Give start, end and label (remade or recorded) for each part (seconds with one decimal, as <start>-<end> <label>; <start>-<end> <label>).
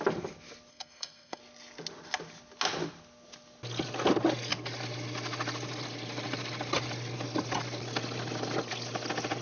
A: 0.0-0.7 recorded; 0.7-1.4 remade; 1.4-9.4 recorded